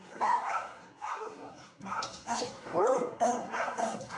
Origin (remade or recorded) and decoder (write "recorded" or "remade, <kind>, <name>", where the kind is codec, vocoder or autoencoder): remade, codec, SNAC